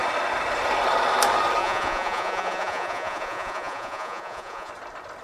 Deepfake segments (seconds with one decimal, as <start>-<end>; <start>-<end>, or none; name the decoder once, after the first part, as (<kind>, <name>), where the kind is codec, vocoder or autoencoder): 1.6-4.7 (vocoder, Vocos)